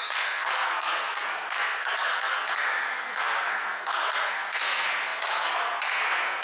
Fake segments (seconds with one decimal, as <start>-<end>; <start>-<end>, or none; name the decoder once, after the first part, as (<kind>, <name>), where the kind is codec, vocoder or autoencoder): 0.0-6.4 (codec, SNAC)